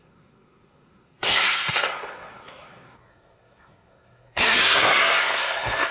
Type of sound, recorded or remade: remade